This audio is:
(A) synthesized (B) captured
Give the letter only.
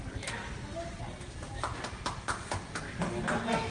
B